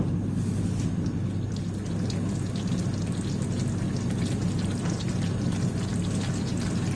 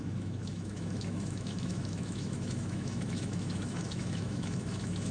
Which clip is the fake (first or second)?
second